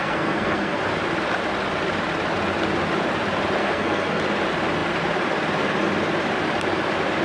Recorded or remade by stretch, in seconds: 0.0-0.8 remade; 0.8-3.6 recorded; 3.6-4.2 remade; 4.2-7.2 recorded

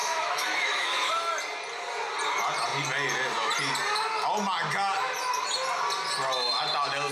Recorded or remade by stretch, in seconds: 0.0-1.1 remade; 1.1-7.1 recorded